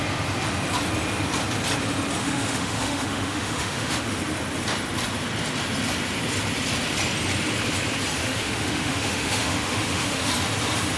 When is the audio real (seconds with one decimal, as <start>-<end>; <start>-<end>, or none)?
0.0-2.2; 4.2-8.2; 10.3-11.0